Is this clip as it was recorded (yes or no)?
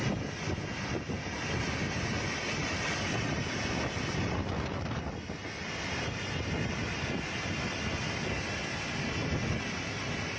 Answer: yes